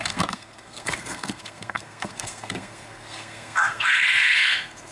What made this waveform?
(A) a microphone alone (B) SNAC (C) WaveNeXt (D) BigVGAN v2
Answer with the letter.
B